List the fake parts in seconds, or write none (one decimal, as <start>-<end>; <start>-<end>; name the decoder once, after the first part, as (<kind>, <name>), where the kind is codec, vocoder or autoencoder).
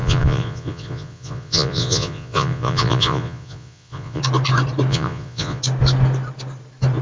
0.0-4.2 (vocoder, Vocos); 4.9-5.6